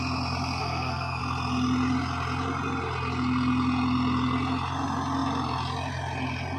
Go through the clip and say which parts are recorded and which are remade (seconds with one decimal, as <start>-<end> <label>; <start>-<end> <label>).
0.0-0.6 recorded; 0.6-1.2 remade; 1.2-6.6 recorded